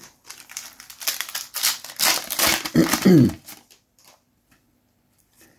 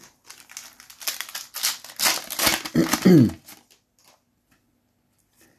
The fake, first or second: first